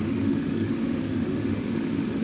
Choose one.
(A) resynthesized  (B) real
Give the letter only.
A